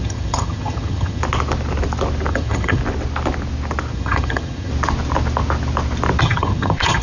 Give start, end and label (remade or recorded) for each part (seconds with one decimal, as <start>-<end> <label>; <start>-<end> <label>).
0.0-1.2 remade; 1.2-2.3 recorded; 2.3-2.8 remade; 2.8-3.9 recorded; 3.9-4.7 remade; 4.7-6.2 recorded; 6.2-7.0 remade